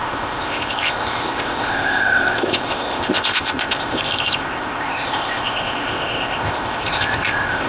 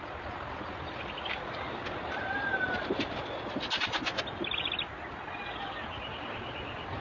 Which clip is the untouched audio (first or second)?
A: second